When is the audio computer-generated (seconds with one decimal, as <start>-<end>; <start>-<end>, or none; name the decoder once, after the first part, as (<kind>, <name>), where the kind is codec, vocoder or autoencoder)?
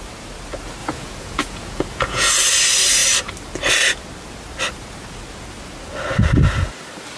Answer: 0.8-2.3 (vocoder, Vocos)